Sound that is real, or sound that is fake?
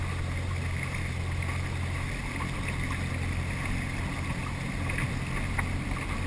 real